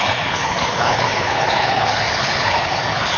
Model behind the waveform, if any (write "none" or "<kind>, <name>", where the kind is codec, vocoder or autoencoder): codec, HILCodec